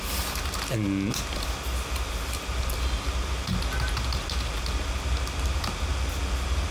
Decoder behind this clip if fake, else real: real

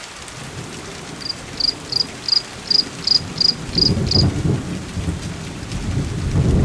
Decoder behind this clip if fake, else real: real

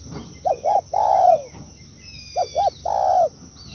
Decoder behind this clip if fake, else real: real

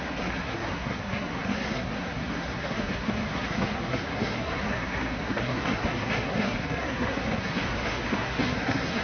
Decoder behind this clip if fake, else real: fake, codec, SNAC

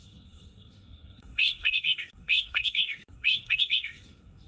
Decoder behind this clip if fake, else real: fake, codec, SNAC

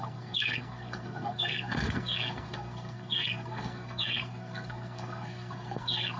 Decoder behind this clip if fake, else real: fake, codec, SNAC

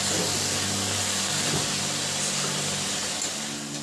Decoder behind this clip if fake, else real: real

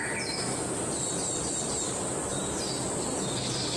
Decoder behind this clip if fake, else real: real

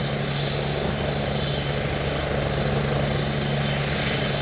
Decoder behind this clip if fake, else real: real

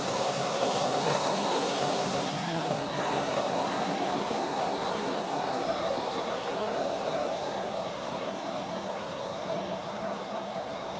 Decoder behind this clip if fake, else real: fake, codec, SNAC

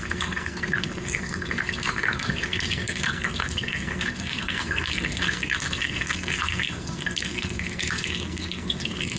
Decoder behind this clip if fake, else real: fake, codec, SNAC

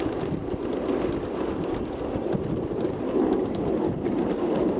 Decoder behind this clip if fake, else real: real